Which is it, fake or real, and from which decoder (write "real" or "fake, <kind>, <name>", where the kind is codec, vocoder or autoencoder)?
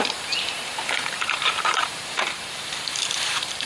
fake, vocoder, BigVGAN v2